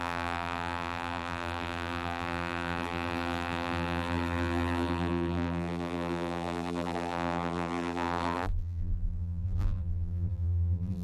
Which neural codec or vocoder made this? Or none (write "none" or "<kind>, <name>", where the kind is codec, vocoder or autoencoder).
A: vocoder, BigVGAN v2